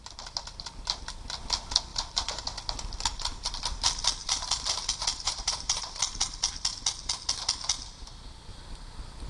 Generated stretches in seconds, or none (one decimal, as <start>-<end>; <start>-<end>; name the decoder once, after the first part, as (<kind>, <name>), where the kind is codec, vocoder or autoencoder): 1.9-2.4 (vocoder, BigVGAN v2); 4.2-6.0

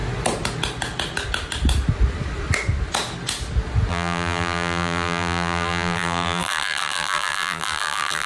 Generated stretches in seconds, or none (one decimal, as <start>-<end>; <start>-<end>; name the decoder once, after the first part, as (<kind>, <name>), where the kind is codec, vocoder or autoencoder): 3.9-8.3 (vocoder, BigVGAN v2)

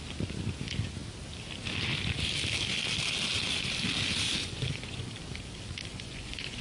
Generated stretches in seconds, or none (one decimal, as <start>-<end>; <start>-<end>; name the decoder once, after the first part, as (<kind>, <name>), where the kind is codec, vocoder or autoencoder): 4.4-5.1 (vocoder, Vocos); 5.9-6.6

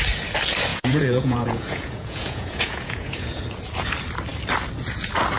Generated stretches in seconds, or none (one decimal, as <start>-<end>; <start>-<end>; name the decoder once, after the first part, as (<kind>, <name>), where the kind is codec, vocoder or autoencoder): 0.7-3.4 (vocoder, Vocos)

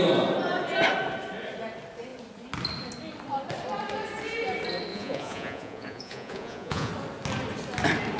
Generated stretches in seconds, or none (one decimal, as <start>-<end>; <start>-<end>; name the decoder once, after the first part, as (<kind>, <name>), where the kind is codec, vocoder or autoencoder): 4.9-6.9 (vocoder, Vocos)